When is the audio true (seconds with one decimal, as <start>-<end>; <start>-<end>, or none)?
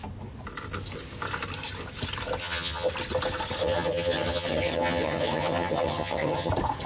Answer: 0.0-2.4; 2.9-3.6; 6.5-6.9